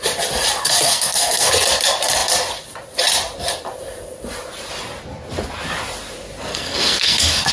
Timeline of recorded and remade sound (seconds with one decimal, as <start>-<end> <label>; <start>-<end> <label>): 0.0-0.6 recorded; 0.6-1.5 remade; 1.5-6.5 recorded; 6.5-7.5 remade